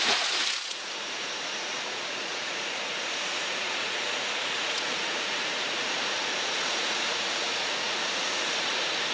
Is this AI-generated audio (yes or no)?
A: yes